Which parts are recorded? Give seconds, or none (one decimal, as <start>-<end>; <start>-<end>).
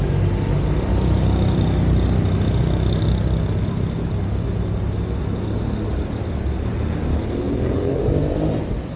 0.0-7.1; 8.0-9.0